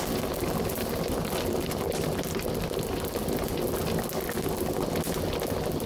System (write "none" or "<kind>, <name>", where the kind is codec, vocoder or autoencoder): none